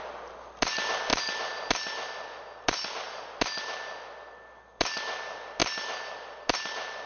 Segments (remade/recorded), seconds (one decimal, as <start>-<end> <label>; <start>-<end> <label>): 0.0-7.1 recorded